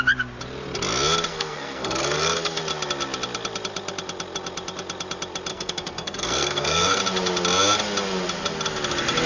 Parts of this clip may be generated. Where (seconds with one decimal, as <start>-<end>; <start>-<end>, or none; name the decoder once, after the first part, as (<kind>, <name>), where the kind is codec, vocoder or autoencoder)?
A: 1.3-2.6 (codec, SNAC); 5.5-7.0